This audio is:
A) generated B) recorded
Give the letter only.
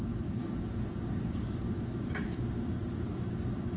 A